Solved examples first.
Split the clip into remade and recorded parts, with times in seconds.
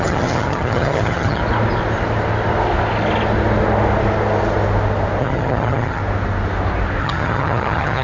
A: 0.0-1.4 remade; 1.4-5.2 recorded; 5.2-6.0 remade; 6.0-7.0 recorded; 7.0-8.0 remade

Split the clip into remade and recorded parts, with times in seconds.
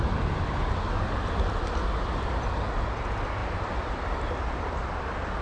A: 0.0-5.4 recorded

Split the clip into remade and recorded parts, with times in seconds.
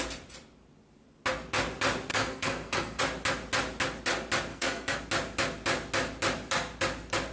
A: 0.0-2.1 recorded; 2.1-3.0 remade; 3.0-4.5 recorded; 4.5-5.0 remade; 5.0-7.3 recorded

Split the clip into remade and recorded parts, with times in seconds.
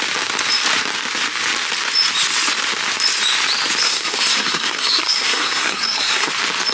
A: 0.0-3.8 recorded; 3.8-6.3 remade; 6.3-6.7 recorded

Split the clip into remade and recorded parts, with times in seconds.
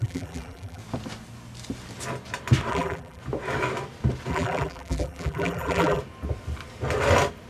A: 0.0-0.8 remade; 0.8-2.7 recorded; 2.7-3.2 remade; 3.2-4.3 recorded; 4.3-6.0 remade; 6.0-7.5 recorded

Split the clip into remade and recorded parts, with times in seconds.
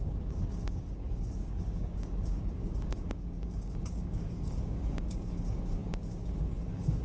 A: 0.0-7.0 remade